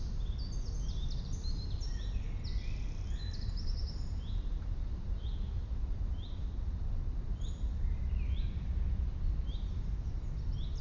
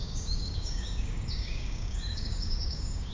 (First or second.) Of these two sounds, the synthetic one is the second